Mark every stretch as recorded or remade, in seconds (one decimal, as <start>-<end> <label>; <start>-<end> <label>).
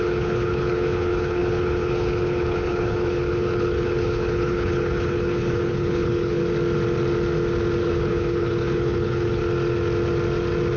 0.0-6.4 remade; 6.4-7.8 recorded; 7.8-9.4 remade; 9.4-10.8 recorded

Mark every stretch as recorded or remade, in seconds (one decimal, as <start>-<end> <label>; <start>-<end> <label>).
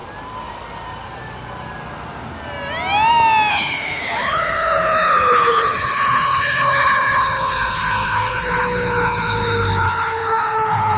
0.0-3.5 recorded; 3.5-11.0 remade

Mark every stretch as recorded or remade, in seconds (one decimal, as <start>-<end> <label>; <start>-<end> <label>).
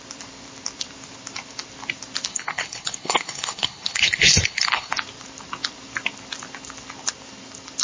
0.0-2.3 recorded; 2.3-4.9 remade; 4.9-7.8 recorded